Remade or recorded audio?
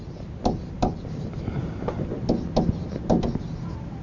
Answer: recorded